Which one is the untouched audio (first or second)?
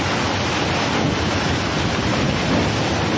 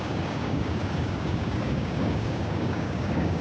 first